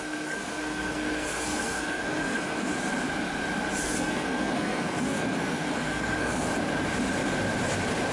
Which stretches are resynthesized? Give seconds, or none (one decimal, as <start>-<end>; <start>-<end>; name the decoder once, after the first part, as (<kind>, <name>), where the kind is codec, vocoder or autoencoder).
0.0-2.7 (codec, SNAC); 3.8-6.5